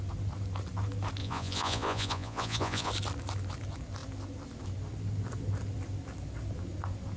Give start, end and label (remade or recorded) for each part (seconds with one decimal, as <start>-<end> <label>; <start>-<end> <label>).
0.0-1.2 recorded; 1.2-2.9 remade; 2.9-7.2 recorded